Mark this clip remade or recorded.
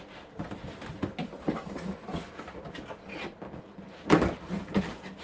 recorded